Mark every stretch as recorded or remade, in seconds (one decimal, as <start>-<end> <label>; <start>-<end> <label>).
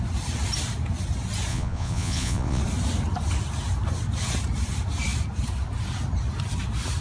0.0-1.5 recorded; 1.5-2.6 remade; 2.6-7.0 recorded